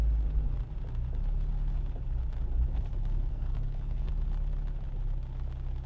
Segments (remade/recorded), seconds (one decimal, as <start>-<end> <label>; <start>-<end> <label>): 0.0-3.3 recorded; 3.3-4.1 remade; 4.1-5.9 recorded